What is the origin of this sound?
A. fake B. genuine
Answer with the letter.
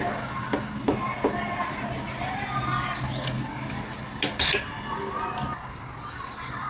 B